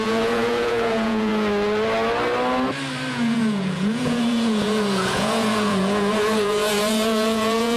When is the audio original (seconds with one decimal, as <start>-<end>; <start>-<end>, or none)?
1.3-3.1